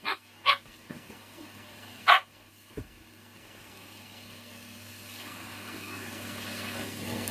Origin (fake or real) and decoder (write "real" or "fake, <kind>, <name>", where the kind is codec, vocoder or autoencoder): fake, codec, SNAC